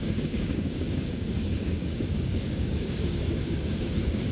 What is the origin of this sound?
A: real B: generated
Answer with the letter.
B